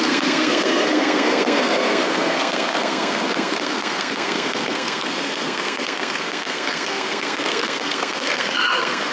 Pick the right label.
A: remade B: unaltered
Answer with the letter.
A